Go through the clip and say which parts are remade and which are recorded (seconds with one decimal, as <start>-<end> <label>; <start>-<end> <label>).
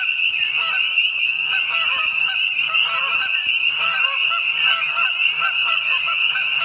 0.0-5.6 recorded; 5.6-6.6 remade